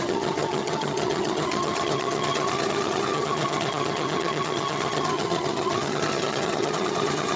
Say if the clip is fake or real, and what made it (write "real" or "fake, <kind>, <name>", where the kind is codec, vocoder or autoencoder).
fake, vocoder, HiFi-GAN